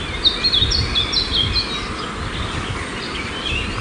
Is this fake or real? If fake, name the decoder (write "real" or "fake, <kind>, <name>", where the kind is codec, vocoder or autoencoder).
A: real